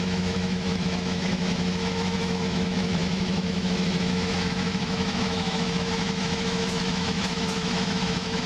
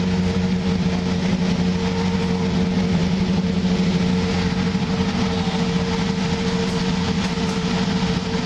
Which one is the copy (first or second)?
first